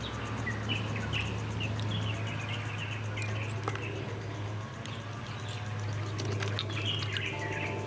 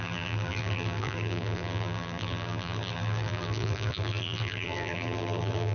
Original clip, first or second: first